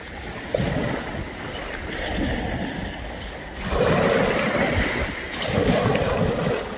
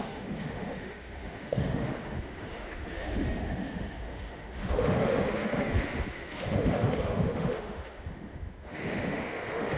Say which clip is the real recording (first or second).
first